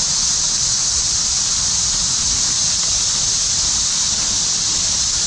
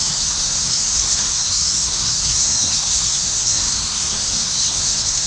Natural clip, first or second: first